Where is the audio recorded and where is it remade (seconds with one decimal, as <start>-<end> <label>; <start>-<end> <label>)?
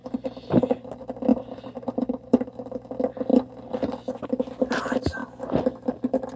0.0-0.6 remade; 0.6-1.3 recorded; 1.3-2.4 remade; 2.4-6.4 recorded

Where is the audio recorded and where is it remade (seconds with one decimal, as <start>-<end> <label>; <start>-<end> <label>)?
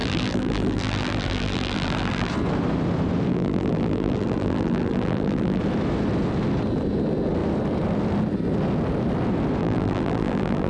0.0-2.3 remade; 2.3-3.3 recorded; 3.3-5.6 remade; 5.6-9.6 recorded; 9.6-10.7 remade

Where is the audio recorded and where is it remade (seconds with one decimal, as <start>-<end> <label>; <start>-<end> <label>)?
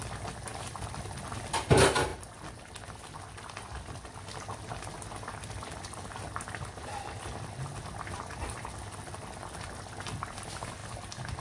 0.0-11.4 recorded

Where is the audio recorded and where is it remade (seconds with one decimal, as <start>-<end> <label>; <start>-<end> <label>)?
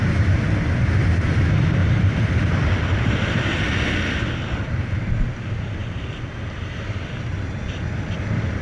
0.0-1.8 recorded; 1.8-3.6 remade; 3.6-5.8 recorded; 5.8-7.9 remade; 7.9-8.6 recorded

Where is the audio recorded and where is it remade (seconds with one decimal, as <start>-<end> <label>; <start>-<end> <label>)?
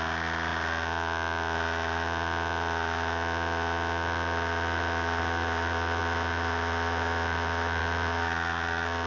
0.0-9.1 recorded